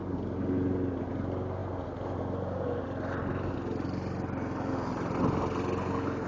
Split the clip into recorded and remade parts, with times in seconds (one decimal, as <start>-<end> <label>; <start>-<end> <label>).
0.0-6.3 recorded